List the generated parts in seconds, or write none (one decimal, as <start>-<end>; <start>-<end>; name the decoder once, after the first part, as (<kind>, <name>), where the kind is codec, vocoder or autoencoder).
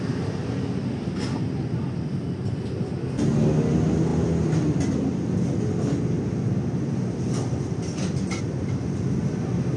none